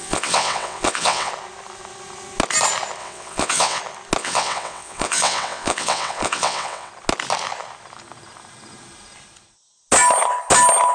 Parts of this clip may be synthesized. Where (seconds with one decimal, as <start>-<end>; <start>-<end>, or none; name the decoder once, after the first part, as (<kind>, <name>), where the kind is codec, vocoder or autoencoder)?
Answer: 0.0-1.3 (vocoder, WaveNeXt); 3.0-3.8; 4.2-6.9